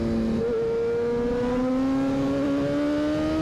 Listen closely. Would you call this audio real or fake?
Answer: real